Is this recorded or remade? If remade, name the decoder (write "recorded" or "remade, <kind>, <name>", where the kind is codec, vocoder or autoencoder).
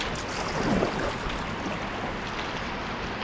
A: recorded